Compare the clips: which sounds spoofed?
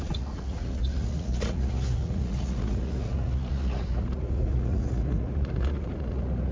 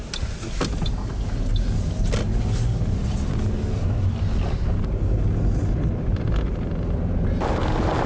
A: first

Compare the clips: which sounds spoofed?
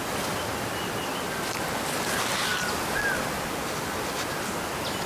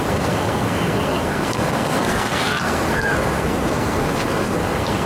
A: second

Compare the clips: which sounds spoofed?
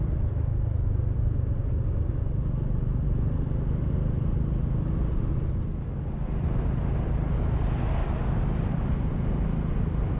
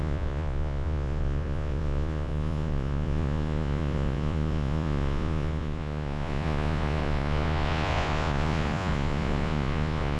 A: second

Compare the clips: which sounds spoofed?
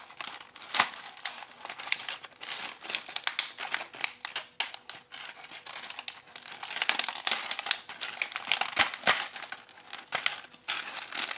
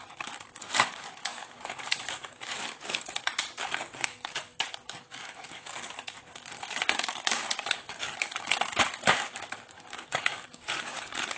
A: second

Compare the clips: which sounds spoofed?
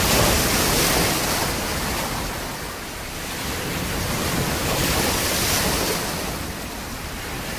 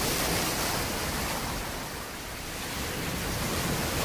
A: second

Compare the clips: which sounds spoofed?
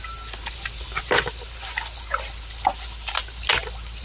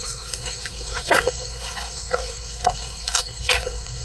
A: second